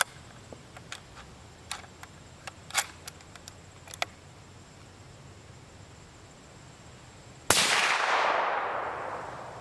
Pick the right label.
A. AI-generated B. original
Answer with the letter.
B